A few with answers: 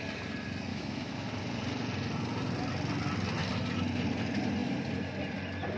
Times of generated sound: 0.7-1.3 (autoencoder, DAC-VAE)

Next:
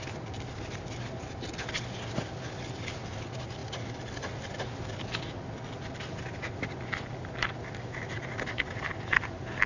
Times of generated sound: none

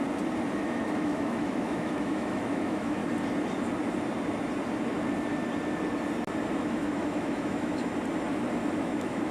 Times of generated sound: 0.6-3.0 (autoencoder, DAC-VAE); 6.5-7.9; 8.7-9.3

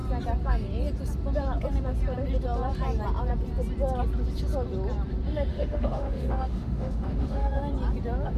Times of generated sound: 5.5-7.6 (autoencoder, DAC-VAE)

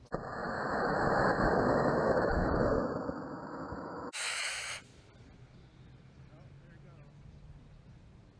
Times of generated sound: 0.4-4.7 (autoencoder, DAC-VAE)